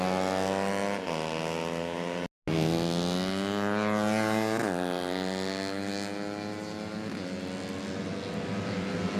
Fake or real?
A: real